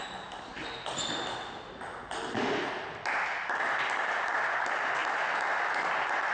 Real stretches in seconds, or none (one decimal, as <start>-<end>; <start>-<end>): 0.0-6.3